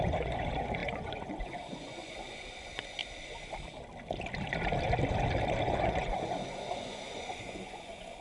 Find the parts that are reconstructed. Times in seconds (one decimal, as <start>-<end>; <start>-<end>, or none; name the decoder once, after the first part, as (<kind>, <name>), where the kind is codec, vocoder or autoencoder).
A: 0.0-3.0 (vocoder, Vocos); 5.6-8.2